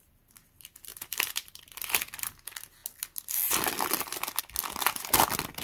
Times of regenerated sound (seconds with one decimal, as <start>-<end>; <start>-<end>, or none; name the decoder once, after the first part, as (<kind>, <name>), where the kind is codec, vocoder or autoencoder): 0.9-1.6 (vocoder, BigVGAN v2)